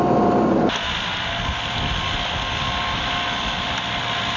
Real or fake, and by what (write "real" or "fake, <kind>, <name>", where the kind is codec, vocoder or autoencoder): real